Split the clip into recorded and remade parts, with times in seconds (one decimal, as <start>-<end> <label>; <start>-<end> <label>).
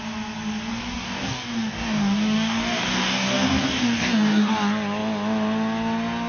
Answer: 0.0-0.7 recorded; 0.7-4.5 remade; 4.5-6.3 recorded